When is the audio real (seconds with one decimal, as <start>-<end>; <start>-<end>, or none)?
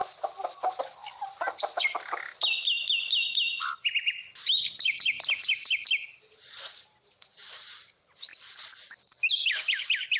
0.0-0.6; 1.0-5.8; 8.3-9.3